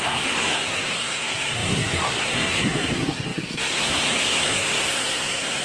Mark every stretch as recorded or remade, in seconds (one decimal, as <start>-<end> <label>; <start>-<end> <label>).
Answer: 0.0-5.6 remade